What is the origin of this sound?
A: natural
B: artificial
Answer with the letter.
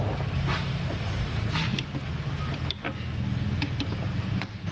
A